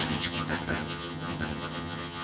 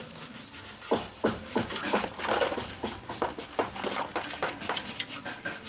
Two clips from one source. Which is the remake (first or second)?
first